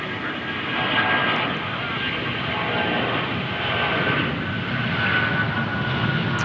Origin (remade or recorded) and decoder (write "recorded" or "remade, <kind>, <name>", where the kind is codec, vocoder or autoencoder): recorded